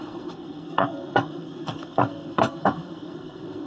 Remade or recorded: remade